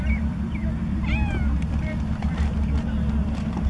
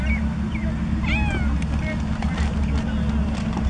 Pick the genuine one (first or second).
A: second